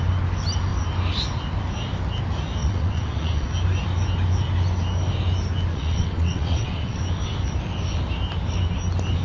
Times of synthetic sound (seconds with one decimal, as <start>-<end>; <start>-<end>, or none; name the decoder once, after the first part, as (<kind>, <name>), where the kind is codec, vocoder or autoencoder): 2.6-3.5 (vocoder, WaveNeXt); 5.7-7.0